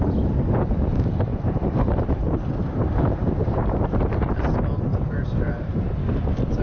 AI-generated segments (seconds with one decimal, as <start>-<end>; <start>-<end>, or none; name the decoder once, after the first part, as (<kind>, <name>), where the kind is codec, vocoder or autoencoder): 1.3-4.2 (vocoder, BigVGAN v2); 4.9-5.9